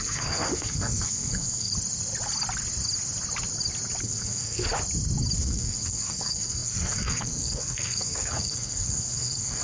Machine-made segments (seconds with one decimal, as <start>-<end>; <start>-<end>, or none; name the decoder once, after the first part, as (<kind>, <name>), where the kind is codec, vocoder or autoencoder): 0.0-1.7 (codec, SNAC); 4.0-4.7; 5.4-9.6